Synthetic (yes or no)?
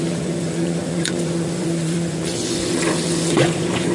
yes